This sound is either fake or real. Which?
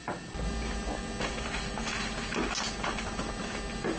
real